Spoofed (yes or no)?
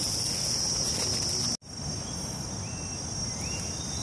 no